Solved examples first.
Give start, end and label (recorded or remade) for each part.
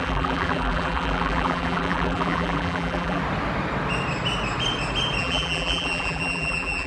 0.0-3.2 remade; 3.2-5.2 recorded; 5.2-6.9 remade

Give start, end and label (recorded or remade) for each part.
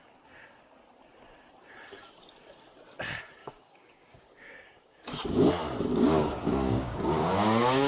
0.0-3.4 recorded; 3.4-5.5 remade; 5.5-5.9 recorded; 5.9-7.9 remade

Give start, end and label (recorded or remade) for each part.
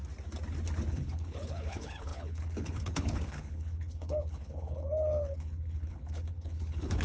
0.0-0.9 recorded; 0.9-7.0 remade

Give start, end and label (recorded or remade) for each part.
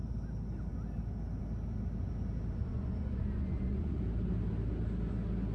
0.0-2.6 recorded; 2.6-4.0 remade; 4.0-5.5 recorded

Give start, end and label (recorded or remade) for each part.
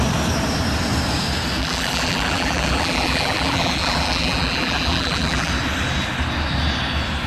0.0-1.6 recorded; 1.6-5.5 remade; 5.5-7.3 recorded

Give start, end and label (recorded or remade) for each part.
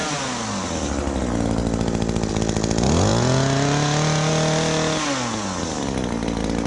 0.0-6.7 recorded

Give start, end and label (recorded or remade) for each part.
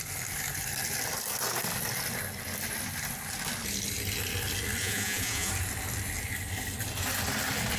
0.0-4.8 recorded; 4.8-5.5 remade; 5.5-7.8 recorded